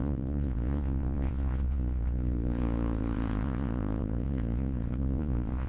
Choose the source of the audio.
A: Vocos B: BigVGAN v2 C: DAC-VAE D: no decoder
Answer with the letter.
A